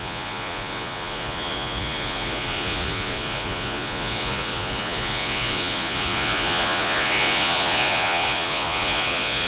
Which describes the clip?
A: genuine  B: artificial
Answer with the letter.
B